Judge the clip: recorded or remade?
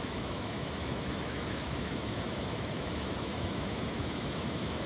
remade